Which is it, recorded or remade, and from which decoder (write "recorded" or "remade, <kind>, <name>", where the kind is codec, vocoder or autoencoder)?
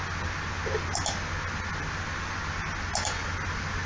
recorded